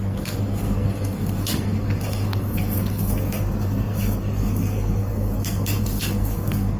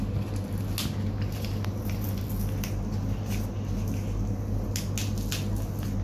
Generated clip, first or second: first